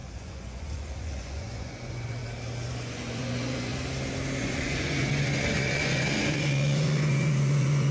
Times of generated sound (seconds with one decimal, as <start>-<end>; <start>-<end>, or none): 0.0-2.2; 2.7-3.7; 4.4-7.9